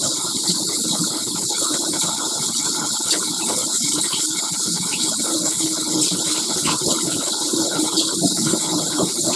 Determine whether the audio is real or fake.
fake